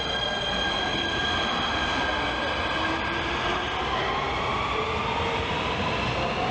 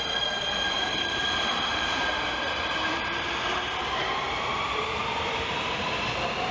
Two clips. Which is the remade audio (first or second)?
second